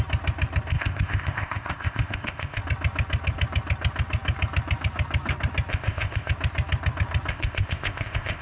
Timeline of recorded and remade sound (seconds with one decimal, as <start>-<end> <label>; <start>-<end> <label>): 0.0-0.7 recorded; 0.7-2.6 remade; 2.6-5.7 recorded; 5.7-6.3 remade; 6.3-7.3 recorded; 7.3-8.4 remade